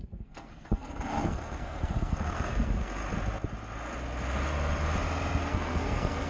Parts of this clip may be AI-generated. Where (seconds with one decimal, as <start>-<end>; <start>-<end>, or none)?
0.0-3.0; 5.4-6.3